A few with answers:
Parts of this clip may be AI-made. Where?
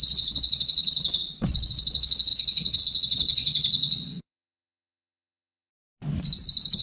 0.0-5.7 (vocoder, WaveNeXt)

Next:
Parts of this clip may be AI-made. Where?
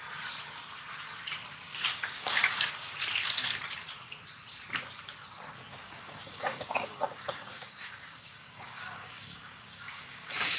1.7-2.7 (codec, DAC); 5.7-10.6